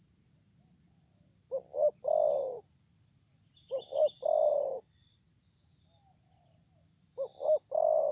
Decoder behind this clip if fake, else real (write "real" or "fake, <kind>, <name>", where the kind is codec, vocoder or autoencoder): real